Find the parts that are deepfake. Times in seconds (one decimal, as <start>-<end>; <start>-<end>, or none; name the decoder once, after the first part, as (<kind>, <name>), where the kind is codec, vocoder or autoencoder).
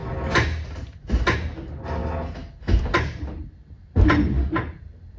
none